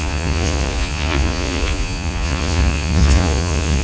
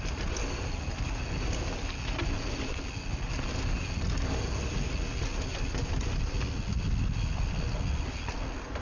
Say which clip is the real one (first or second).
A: second